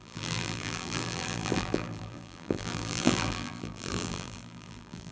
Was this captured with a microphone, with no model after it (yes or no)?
no